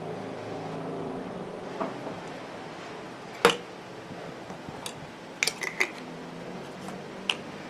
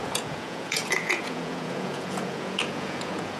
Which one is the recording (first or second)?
first